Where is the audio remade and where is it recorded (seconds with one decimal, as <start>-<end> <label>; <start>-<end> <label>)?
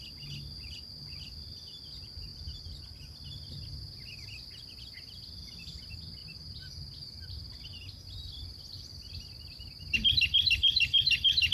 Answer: 0.0-11.5 recorded